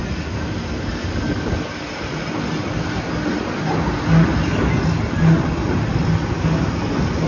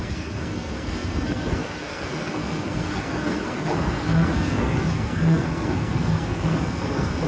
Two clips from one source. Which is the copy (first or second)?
second